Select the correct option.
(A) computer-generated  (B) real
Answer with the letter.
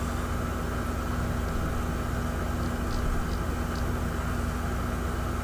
B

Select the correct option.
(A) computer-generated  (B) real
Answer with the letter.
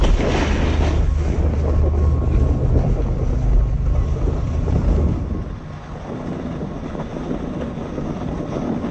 B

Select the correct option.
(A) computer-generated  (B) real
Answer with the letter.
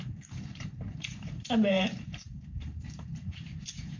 A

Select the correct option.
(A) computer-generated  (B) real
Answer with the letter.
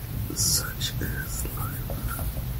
A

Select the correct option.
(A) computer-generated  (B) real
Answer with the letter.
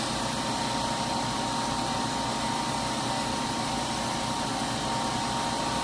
A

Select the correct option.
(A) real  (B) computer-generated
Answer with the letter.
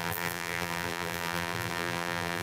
B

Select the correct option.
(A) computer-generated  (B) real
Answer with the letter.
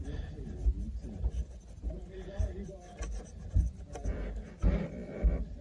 B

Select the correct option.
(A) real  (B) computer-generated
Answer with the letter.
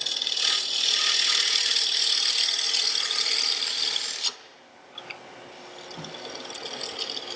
A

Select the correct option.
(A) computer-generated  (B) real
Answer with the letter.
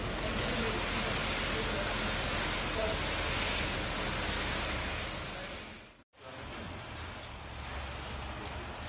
B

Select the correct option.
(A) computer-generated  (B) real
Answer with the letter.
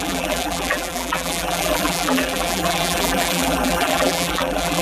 A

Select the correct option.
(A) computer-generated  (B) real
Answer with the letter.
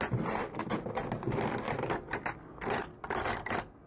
B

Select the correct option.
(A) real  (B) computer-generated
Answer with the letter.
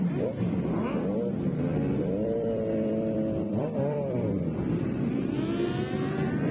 B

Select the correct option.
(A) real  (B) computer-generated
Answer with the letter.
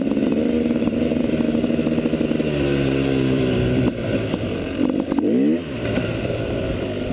B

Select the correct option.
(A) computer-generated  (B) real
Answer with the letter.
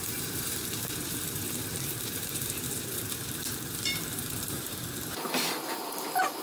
A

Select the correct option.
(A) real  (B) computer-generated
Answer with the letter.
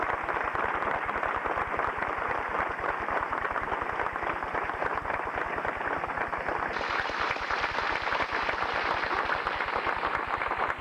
A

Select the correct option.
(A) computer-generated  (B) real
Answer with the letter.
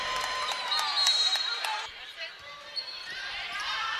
A